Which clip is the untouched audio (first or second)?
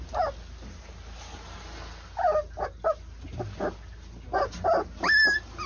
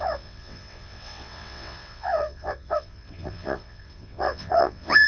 first